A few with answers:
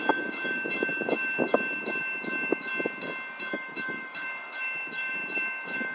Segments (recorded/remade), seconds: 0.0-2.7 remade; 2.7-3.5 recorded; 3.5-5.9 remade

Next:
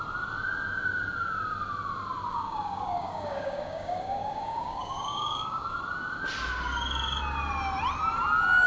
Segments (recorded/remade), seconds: 0.0-2.3 recorded; 2.3-5.8 remade; 5.8-8.7 recorded

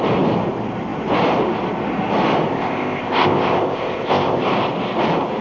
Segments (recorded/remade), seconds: 0.0-2.5 recorded; 2.5-4.4 remade; 4.4-5.4 recorded